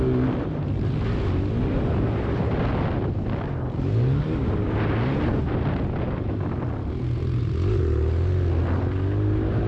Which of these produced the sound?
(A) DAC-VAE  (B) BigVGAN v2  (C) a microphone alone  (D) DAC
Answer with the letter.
C